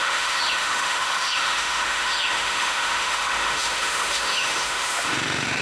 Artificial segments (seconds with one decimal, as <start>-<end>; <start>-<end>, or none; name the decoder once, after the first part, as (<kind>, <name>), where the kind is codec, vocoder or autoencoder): 0.0-5.6 (autoencoder, DAC-VAE)